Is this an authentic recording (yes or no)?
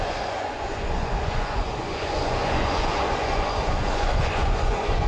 no